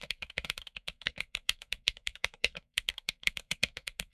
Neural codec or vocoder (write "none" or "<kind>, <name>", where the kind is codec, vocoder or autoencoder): codec, SNAC